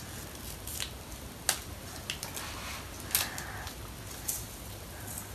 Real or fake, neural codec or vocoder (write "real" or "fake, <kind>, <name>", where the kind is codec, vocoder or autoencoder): real